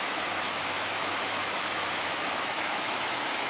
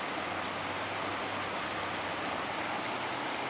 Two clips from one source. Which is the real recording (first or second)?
second